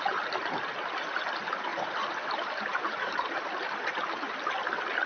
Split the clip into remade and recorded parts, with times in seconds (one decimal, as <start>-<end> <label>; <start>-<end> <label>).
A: 0.0-1.7 recorded; 1.7-3.4 remade; 3.4-5.1 recorded

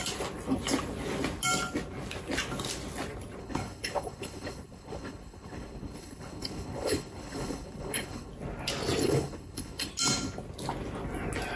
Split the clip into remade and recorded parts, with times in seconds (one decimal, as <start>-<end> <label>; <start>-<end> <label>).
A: 0.0-3.4 recorded; 3.4-8.3 remade; 8.3-9.0 recorded; 9.0-9.9 remade; 9.9-11.6 recorded

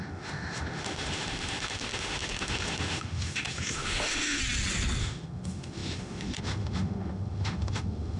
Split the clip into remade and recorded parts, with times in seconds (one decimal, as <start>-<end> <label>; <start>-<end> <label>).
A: 0.0-4.4 remade; 4.4-5.0 recorded; 5.0-8.2 remade

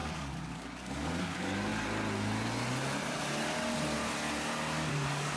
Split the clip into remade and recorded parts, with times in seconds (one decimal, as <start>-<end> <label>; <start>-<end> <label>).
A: 0.0-1.7 remade; 1.7-4.9 recorded; 4.9-5.4 remade

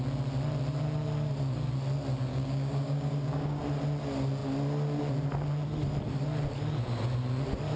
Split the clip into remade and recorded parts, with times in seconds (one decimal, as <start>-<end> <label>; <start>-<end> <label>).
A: 0.0-2.3 recorded; 2.3-3.6 remade; 3.6-7.8 recorded

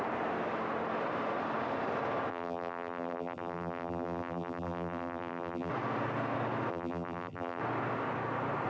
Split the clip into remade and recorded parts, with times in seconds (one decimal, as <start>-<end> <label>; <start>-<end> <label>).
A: 0.0-2.3 recorded; 2.3-5.7 remade; 5.7-6.7 recorded; 6.7-7.6 remade; 7.6-8.7 recorded

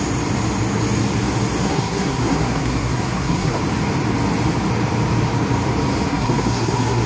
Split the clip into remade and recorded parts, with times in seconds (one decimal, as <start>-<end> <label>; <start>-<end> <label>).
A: 0.0-1.6 recorded; 1.6-3.6 remade; 3.6-6.1 recorded; 6.1-7.1 remade